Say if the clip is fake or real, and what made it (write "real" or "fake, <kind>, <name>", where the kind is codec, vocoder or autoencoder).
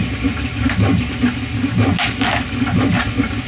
real